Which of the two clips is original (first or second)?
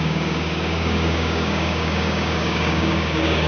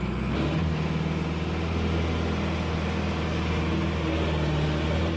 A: second